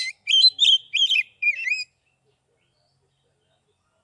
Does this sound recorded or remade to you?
recorded